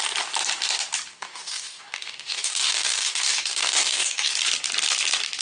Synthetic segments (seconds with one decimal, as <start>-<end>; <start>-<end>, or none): 1.1-4.3